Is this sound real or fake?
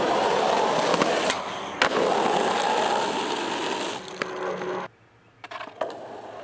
real